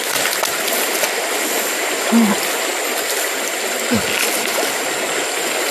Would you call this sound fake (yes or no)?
no